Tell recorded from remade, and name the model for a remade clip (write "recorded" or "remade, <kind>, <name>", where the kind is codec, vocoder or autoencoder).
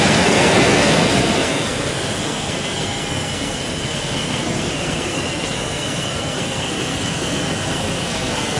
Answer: remade, codec, SNAC